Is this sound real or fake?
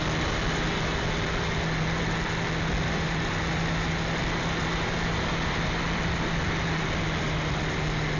real